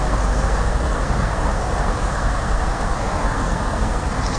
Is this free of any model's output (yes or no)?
no